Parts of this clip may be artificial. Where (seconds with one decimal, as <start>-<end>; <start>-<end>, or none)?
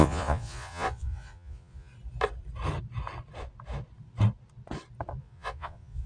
0.0-1.9; 5.2-6.1